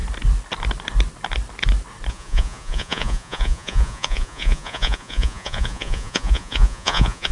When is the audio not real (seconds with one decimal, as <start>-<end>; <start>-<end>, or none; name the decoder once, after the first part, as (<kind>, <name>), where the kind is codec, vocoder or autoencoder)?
2.1-7.3 (vocoder, Vocos)